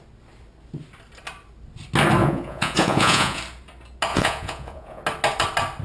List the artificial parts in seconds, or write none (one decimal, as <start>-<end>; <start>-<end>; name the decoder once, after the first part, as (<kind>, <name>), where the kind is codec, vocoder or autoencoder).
2.2-3.4 (vocoder, Vocos); 4.1-5.0

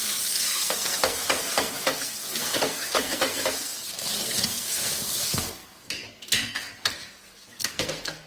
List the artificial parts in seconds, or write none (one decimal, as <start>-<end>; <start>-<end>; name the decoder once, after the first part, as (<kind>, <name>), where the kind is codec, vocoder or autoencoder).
0.0-8.3 (codec, SNAC)

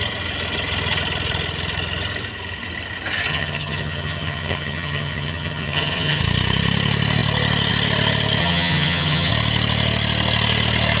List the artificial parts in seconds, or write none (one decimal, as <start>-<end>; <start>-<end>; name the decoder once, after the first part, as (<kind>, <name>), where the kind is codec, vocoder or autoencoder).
3.3-6.2 (vocoder, HiFi-GAN); 8.4-9.3

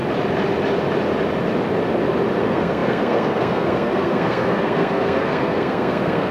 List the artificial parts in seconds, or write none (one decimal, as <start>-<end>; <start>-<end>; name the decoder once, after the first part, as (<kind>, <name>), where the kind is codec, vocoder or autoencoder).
2.4-6.3 (codec, SNAC)

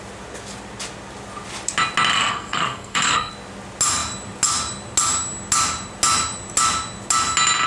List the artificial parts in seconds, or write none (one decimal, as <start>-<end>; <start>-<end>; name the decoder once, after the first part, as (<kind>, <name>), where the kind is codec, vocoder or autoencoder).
2.1-3.3 (codec, SNAC)

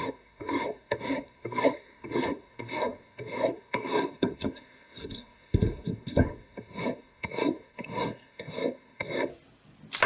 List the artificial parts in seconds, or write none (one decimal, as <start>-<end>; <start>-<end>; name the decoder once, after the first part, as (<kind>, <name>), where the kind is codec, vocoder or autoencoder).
0.0-9.3 (codec, SNAC)

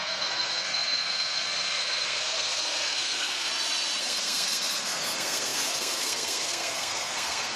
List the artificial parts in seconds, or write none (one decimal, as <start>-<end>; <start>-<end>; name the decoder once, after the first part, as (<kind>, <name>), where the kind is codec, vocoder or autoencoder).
0.0-3.5 (codec, SNAC); 4.0-7.6

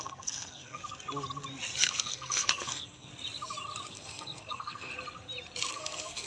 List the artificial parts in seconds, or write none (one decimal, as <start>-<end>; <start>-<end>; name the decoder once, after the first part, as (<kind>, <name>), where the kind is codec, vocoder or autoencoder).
0.0-0.8 (codec, SNAC); 1.8-3.1; 3.9-4.9; 5.7-6.3